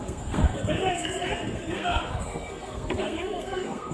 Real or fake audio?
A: fake